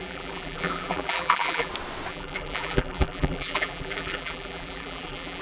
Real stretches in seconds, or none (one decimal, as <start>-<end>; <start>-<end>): 1.7-2.1